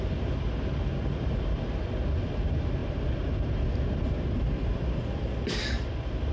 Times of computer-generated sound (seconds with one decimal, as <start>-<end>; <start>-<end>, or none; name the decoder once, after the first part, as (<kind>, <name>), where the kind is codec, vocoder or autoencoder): 0.0-2.8 (vocoder, BigVGAN v2); 4.7-6.3